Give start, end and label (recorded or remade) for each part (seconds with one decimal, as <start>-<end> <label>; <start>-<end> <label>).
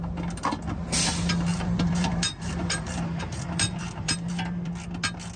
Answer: 0.0-1.5 recorded; 1.5-4.7 remade; 4.7-5.4 recorded